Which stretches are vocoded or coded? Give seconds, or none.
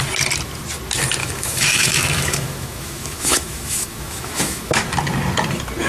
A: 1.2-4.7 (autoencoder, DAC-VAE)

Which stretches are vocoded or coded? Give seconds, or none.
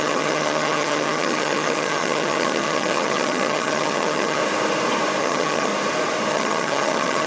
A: 0.0-4.4 (vocoder, HiFi-GAN); 5.2-5.7; 6.3-7.3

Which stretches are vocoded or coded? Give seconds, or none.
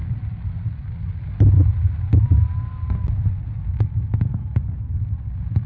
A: none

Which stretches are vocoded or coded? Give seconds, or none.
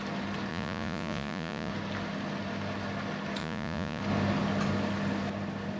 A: 0.5-1.7 (vocoder, Vocos); 3.4-4.0